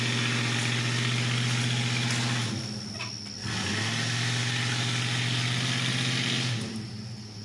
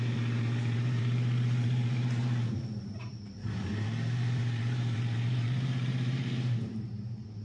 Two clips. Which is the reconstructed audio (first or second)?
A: second